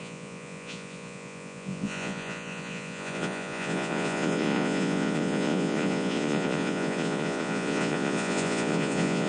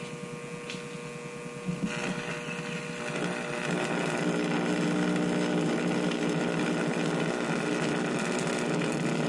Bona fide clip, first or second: second